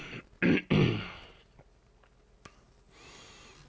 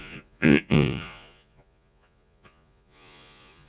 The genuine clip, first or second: first